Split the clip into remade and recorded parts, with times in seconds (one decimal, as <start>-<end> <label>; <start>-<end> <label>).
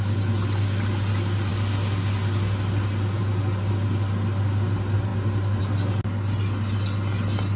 0.0-7.6 recorded